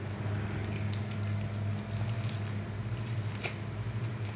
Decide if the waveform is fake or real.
real